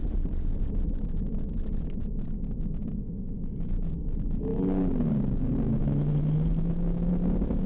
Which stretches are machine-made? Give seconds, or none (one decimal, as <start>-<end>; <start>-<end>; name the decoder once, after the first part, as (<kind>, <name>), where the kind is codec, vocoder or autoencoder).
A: none

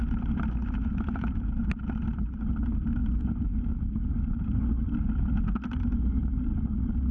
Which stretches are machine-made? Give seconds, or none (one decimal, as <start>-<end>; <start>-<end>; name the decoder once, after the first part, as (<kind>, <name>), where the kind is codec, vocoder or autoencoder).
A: 0.6-1.5 (vocoder, Vocos)

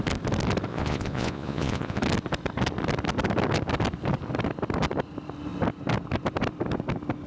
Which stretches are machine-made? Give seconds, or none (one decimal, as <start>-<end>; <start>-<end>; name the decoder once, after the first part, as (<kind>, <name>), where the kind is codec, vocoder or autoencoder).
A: 0.7-2.0 (vocoder, Vocos)

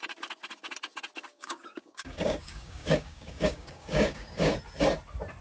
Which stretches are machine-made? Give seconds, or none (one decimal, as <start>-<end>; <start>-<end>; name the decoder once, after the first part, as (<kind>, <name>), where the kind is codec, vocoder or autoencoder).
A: 1.3-4.5 (codec, DAC)

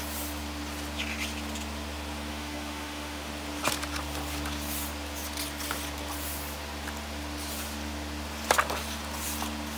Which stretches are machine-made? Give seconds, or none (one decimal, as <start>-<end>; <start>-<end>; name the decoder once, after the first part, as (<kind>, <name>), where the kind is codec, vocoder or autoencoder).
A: 2.3-3.3 (autoencoder, DAC-VAE)